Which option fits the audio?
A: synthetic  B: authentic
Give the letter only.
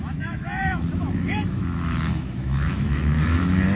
A